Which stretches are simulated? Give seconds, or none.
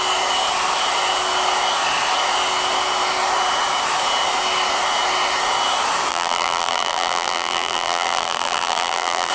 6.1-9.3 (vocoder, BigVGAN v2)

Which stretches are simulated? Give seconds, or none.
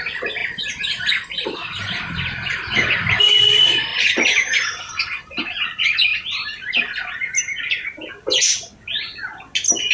none